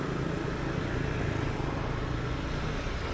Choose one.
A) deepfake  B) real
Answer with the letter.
B